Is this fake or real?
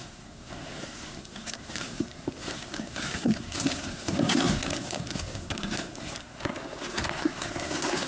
fake